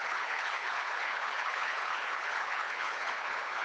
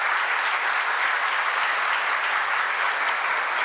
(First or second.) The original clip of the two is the second